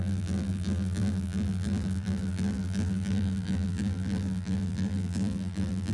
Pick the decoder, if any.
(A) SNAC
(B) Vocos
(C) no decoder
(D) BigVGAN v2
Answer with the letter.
D